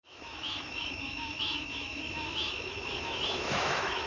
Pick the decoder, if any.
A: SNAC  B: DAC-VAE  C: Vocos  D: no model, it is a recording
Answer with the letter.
B